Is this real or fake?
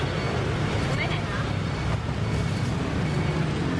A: real